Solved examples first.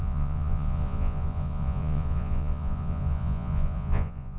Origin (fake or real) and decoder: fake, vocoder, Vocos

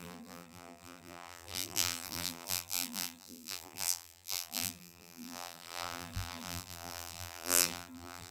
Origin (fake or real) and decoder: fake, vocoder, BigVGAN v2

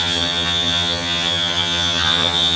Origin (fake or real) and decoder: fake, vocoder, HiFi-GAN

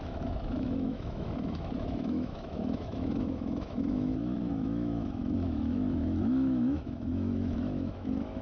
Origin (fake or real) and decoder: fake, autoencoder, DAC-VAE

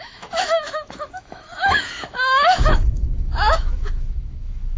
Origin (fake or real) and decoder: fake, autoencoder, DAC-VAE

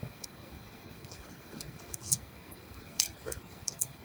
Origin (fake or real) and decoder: fake, codec, SNAC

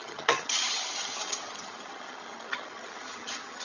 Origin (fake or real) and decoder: fake, vocoder, HiFi-GAN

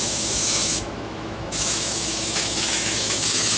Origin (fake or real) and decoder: fake, autoencoder, DAC-VAE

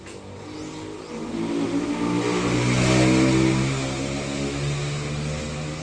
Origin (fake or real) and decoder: real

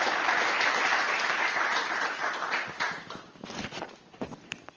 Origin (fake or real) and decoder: real